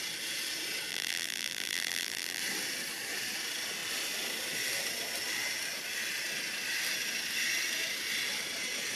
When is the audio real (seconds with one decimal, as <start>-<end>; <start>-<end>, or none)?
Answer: 0.0-0.9; 2.4-9.0